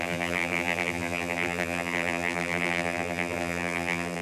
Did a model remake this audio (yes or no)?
yes